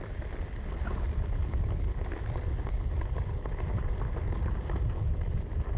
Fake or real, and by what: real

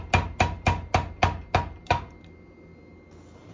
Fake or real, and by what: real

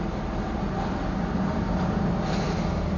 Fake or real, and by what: real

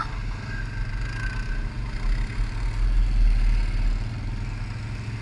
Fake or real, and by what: real